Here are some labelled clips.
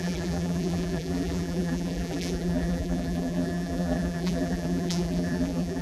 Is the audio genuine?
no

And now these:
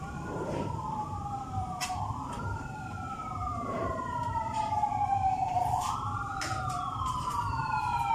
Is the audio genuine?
no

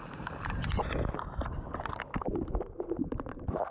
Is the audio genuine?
no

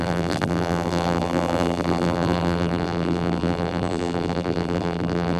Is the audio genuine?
no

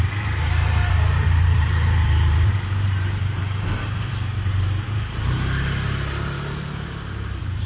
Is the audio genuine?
no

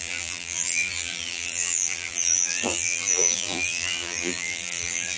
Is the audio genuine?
no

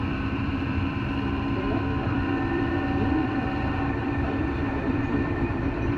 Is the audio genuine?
no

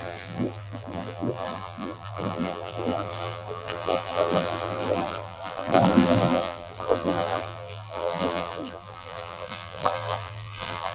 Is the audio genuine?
no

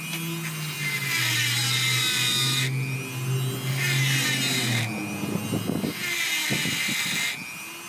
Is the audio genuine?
yes